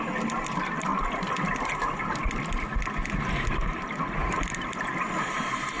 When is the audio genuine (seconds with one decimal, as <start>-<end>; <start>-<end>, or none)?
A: 0.0-4.2; 4.9-5.8

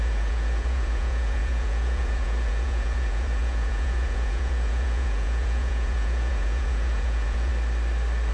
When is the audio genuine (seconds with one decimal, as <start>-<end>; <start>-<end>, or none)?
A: 7.5-8.3

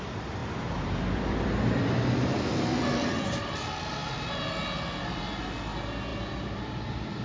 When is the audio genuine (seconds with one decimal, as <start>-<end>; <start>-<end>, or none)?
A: 0.0-0.4; 2.8-6.1

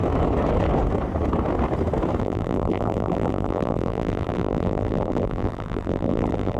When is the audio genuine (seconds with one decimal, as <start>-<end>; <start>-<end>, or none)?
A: 0.0-2.2

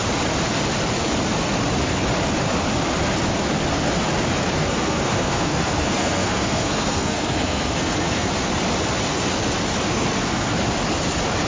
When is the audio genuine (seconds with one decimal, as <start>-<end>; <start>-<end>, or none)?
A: 0.0-4.6; 8.3-9.9; 10.5-11.5

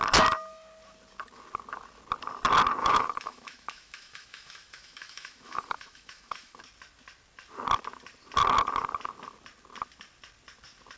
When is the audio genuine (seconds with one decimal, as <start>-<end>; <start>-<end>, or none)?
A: 0.0-2.8; 6.6-11.0